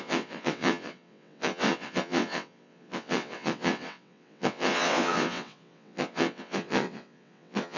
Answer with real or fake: fake